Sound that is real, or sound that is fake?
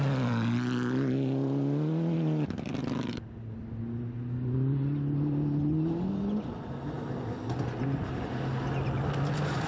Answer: real